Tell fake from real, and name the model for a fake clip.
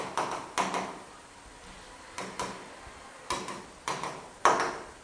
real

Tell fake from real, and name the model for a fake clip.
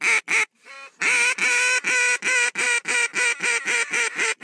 real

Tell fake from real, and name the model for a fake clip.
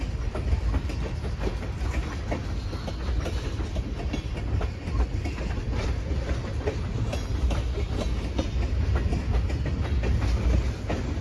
real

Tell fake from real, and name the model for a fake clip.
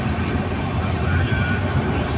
real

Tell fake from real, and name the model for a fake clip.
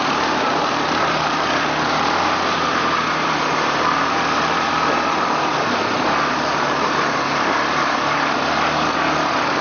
fake, vocoder, BigVGAN v2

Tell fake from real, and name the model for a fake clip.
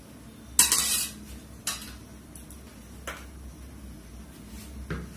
real